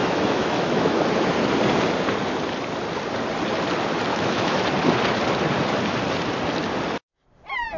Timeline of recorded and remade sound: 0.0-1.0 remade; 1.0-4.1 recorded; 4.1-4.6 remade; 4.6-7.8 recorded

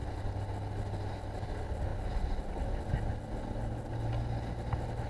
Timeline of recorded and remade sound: 0.0-5.1 recorded

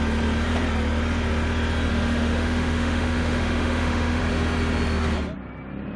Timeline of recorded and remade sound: 0.0-1.9 recorded; 1.9-4.2 remade; 4.2-6.0 recorded

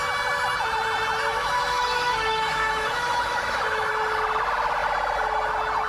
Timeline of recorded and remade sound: 0.0-1.3 recorded; 1.3-3.9 remade; 3.9-5.9 recorded

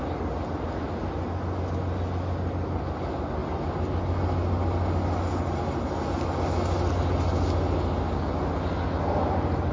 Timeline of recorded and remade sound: 0.0-9.7 recorded

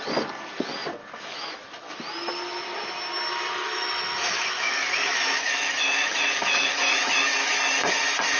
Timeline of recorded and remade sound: 0.0-1.0 recorded; 1.0-1.9 remade; 1.9-3.6 recorded; 3.6-8.0 remade; 8.0-8.4 recorded

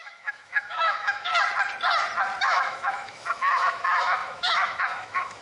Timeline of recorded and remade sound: 0.0-1.3 remade; 1.3-2.4 recorded; 2.4-5.4 remade

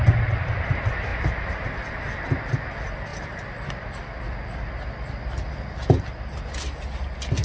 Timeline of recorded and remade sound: 0.0-7.4 recorded